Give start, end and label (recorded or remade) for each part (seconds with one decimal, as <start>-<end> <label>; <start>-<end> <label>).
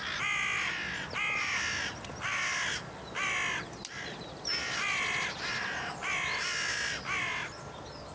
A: 0.0-8.1 recorded